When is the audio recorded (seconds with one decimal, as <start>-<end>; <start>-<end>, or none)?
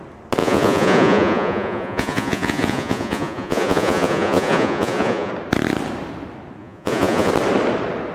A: 0.0-0.4; 5.3-6.6; 7.3-8.1